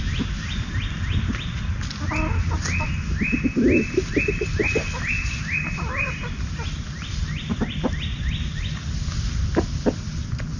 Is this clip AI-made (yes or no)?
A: no